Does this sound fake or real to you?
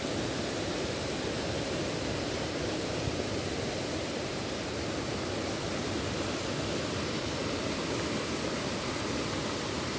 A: real